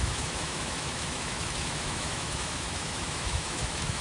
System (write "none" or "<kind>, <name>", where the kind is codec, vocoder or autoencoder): autoencoder, DAC-VAE